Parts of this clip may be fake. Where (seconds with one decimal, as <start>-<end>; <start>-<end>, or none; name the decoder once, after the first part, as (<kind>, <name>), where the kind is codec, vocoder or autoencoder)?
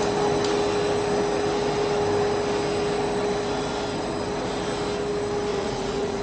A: 5.5-6.2 (vocoder, Vocos)